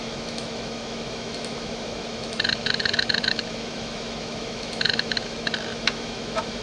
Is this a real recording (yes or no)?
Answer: no